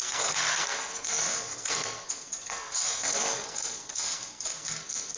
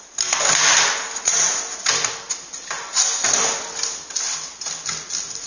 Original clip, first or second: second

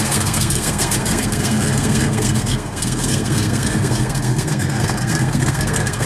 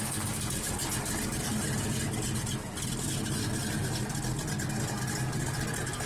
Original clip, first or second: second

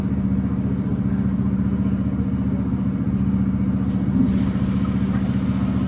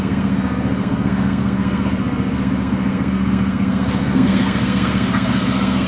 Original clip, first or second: first